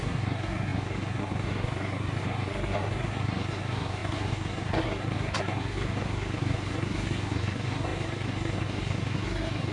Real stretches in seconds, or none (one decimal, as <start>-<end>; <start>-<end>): none